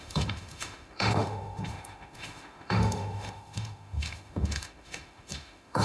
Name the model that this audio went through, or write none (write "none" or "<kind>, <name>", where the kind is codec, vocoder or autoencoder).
autoencoder, DAC-VAE